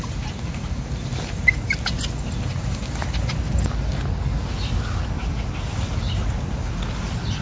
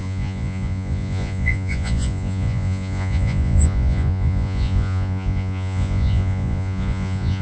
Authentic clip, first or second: first